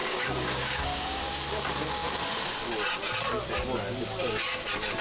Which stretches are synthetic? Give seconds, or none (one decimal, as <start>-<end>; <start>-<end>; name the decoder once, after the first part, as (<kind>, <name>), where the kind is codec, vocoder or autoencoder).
0.0-1.2 (codec, DAC)